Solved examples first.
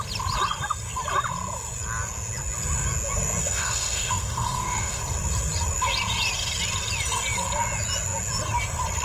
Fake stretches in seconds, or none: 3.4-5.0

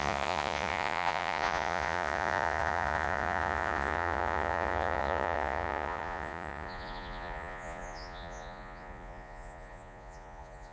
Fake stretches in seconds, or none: 0.0-10.7

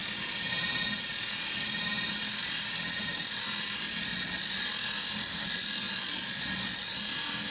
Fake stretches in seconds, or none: 4.1-4.7; 5.8-7.0